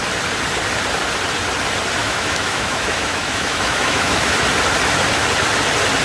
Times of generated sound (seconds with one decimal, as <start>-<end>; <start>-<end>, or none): 2.0-4.4